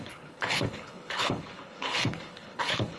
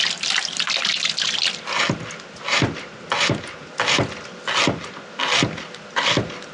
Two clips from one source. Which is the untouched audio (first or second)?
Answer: second